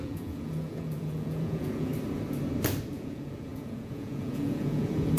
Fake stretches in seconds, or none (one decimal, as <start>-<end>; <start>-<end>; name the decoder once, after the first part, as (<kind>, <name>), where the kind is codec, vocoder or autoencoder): 0.0-1.9 (vocoder, Vocos); 2.9-5.2